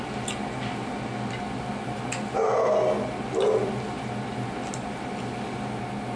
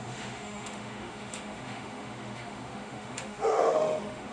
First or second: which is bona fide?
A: first